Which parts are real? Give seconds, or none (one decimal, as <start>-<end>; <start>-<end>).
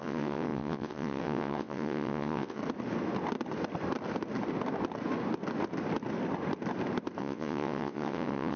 2.6-7.2